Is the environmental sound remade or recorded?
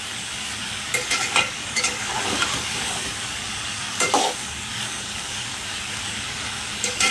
remade